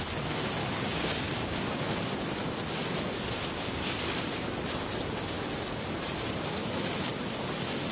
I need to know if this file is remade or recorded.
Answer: recorded